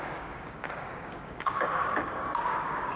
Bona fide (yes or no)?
no